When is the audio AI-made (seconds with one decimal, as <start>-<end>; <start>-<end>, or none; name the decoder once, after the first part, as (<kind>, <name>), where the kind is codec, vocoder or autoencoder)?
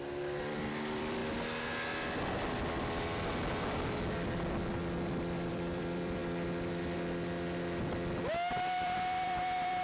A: 0.0-1.2 (vocoder, BigVGAN v2); 5.5-6.2; 8.5-9.8